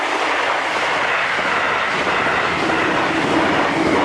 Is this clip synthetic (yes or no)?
no